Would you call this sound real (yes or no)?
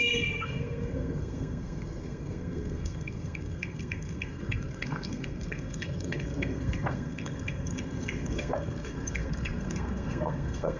no